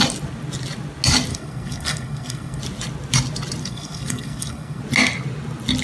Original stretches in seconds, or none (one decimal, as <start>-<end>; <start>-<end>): 0.0-1.3; 2.6-3.6; 4.8-5.8